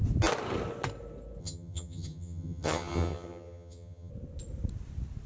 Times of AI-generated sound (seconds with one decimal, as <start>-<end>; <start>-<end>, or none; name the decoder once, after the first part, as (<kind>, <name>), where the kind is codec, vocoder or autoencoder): 1.4-4.1 (vocoder, HiFi-GAN)